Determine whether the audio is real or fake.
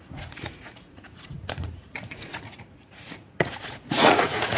fake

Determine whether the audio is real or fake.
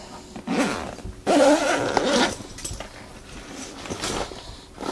real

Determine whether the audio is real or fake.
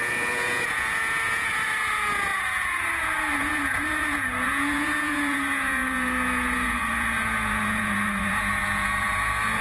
fake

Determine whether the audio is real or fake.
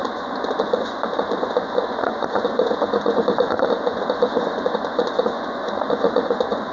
fake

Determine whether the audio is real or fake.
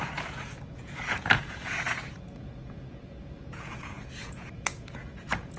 fake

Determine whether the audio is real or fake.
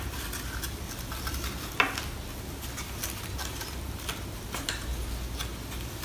real